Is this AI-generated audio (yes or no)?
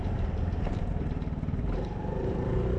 yes